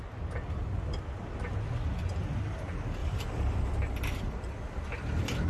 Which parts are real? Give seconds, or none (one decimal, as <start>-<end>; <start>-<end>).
0.0-3.0; 3.7-5.5